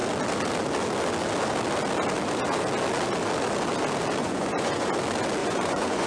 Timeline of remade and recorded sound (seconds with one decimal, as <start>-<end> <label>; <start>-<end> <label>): 0.0-4.2 recorded; 4.2-4.9 remade; 4.9-5.4 recorded; 5.4-6.1 remade